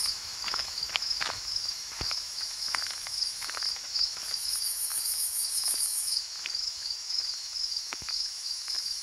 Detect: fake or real fake